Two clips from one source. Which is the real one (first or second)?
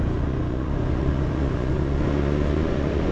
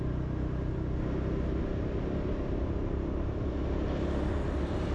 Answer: second